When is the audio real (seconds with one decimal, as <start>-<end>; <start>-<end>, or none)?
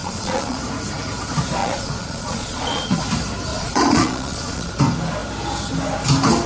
0.6-1.6; 3.0-3.5; 4.8-6.5